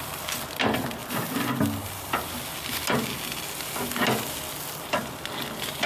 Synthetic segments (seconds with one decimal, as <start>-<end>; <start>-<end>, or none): none